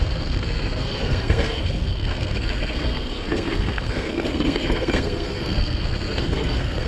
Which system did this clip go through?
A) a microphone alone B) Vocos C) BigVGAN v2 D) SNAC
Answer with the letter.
D